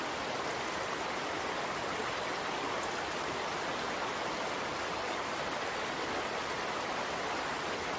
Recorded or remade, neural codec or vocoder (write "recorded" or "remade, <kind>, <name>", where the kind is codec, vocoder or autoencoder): recorded